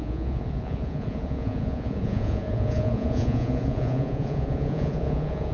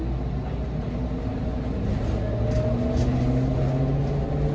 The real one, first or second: second